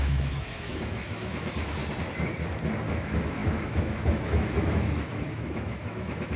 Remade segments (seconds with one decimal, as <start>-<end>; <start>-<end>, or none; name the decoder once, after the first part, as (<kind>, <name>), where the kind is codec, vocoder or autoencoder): 0.0-1.8 (autoencoder, DAC-VAE); 2.9-6.4